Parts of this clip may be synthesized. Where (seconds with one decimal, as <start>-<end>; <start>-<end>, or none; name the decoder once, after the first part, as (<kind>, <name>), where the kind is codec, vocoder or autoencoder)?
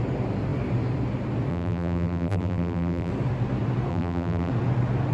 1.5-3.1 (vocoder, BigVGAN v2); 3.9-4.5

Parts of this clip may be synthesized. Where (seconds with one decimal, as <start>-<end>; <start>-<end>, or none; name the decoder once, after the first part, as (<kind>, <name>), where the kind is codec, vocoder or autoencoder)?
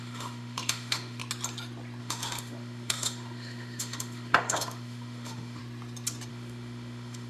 0.0-1.2 (autoencoder, DAC-VAE); 2.0-5.6; 6.3-7.3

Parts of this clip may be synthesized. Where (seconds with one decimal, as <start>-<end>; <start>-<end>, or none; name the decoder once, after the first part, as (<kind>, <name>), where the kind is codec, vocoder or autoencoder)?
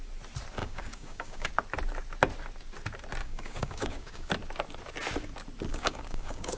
0.6-1.5 (codec, DAC); 3.2-4.3; 5.7-6.6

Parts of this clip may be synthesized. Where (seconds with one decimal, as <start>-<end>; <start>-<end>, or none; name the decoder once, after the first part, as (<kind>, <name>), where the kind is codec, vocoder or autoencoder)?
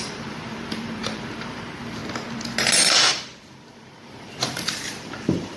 0.0-2.0 (vocoder, BigVGAN v2); 3.7-5.6